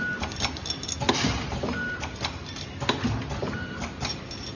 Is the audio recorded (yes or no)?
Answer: yes